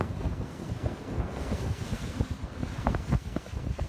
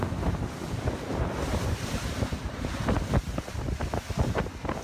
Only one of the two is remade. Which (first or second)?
first